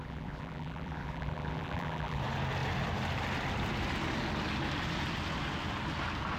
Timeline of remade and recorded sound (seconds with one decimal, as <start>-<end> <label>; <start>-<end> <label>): 0.0-2.2 remade; 2.2-6.4 recorded